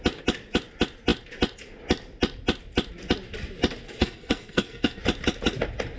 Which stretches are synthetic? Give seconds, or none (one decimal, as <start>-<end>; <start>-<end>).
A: 4.0-5.0